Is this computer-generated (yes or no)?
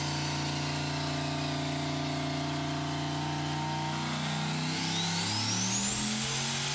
no